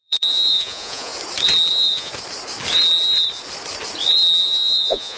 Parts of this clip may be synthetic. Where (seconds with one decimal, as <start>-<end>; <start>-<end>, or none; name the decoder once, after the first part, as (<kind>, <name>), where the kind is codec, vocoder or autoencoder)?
0.0-1.1 (vocoder, Vocos); 1.7-2.1; 4.4-5.2